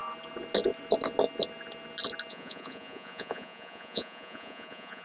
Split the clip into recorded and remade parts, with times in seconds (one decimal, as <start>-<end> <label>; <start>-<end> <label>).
0.0-2.3 recorded; 2.3-5.0 remade